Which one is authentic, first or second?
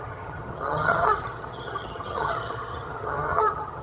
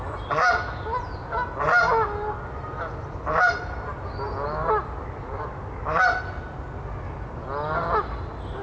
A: second